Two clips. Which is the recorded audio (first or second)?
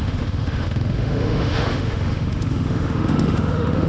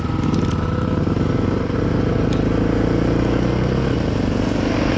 second